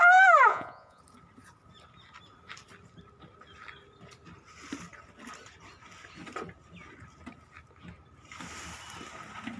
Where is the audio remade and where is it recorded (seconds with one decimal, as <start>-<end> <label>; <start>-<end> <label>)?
0.0-0.5 recorded; 0.5-1.0 remade; 1.0-9.6 recorded